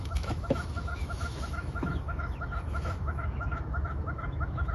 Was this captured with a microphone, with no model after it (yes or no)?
no